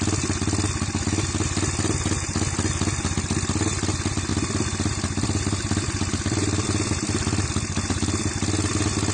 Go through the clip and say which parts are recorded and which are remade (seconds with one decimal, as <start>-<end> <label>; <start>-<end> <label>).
0.0-4.3 recorded; 4.3-8.3 remade; 8.3-9.1 recorded